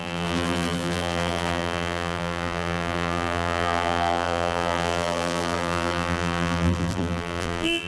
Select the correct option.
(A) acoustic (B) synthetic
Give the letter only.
B